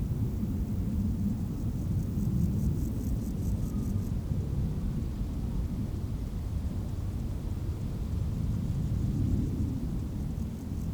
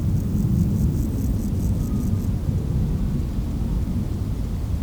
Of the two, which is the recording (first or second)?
second